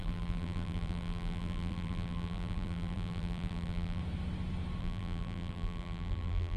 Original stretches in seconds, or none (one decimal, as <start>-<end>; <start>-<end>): 4.0-4.8